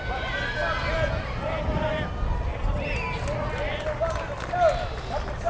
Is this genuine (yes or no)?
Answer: yes